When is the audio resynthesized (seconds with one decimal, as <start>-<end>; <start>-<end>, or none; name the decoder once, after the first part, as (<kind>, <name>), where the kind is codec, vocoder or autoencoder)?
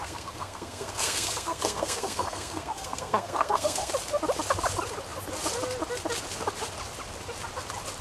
0.0-3.9 (codec, SNAC)